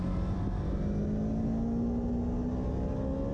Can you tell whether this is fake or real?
real